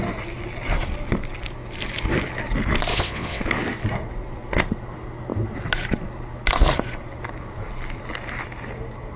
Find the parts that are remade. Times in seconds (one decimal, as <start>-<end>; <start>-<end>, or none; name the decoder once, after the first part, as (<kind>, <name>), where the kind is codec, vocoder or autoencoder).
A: 2.9-3.4 (vocoder, WaveNeXt)